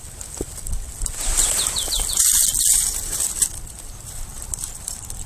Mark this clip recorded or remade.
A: recorded